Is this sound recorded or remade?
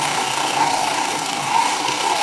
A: remade